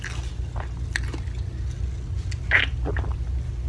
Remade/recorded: recorded